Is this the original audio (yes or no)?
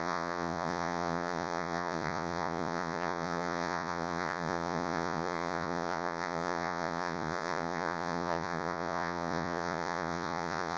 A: no